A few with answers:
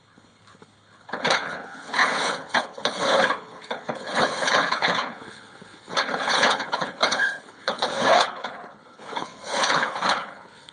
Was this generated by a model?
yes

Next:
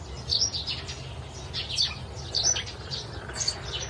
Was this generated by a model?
no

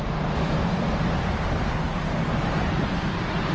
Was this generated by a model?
no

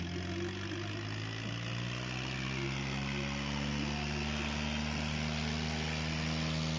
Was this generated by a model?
no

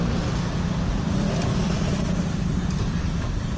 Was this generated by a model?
no